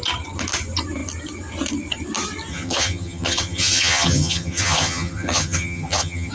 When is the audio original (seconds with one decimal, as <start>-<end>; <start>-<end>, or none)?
0.0-2.5